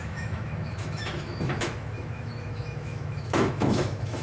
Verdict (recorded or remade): remade